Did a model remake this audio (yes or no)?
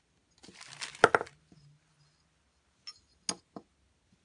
no